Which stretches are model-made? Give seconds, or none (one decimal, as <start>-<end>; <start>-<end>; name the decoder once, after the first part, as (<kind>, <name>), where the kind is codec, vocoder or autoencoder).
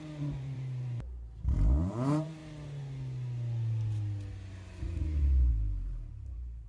0.0-2.4 (vocoder, BigVGAN v2); 5.5-6.7